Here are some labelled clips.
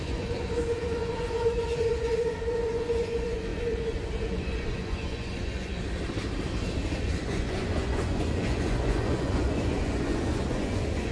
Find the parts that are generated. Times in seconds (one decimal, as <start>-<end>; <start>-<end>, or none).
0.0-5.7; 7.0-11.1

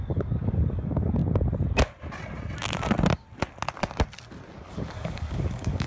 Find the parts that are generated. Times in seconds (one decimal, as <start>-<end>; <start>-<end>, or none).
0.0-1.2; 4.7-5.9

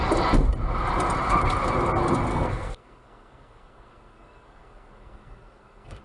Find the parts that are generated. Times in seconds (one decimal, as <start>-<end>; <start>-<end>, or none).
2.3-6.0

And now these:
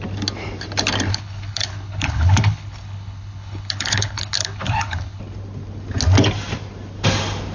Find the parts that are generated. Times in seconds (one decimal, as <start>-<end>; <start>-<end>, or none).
1.1-5.2

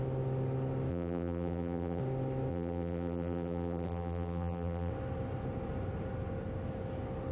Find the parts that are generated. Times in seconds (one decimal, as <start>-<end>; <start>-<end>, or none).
0.9-2.0; 2.5-4.9